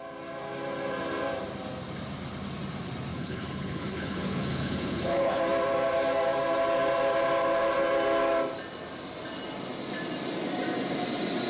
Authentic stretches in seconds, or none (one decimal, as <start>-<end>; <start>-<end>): 0.0-3.1; 5.4-11.5